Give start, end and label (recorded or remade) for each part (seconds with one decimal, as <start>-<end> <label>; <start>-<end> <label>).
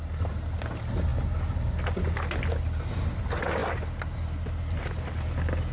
0.0-5.7 recorded